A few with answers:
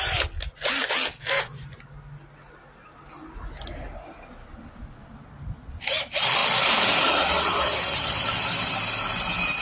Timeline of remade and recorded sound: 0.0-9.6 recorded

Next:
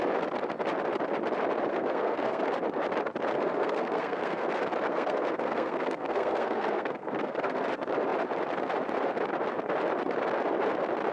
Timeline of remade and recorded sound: 0.0-1.7 recorded; 1.7-2.4 remade; 2.4-3.3 recorded; 3.3-4.5 remade; 4.5-4.9 recorded; 4.9-7.6 remade; 7.6-11.1 recorded

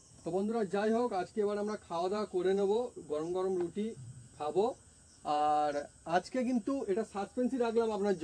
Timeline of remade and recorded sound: 0.0-1.1 remade; 1.1-2.0 recorded; 2.0-6.3 remade; 6.3-8.2 recorded

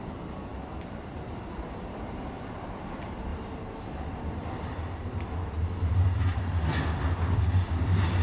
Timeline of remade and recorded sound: 0.0-3.3 remade; 3.3-4.3 recorded; 4.3-8.2 remade

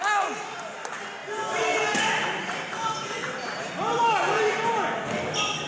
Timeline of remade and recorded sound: 0.0-2.4 recorded; 2.4-4.0 remade; 4.0-5.7 recorded

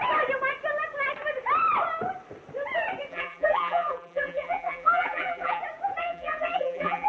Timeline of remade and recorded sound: 0.0-3.1 recorded; 3.1-5.6 remade; 5.6-6.0 recorded; 6.0-7.1 remade